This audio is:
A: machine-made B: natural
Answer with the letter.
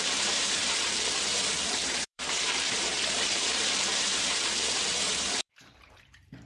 A